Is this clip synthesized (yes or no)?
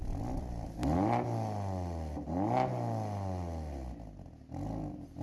no